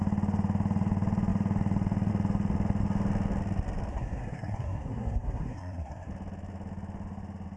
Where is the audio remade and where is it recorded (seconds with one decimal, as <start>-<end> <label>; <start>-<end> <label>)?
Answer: 0.0-3.9 recorded; 3.9-6.1 remade; 6.1-7.6 recorded